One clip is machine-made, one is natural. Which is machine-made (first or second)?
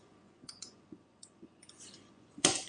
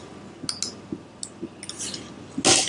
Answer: first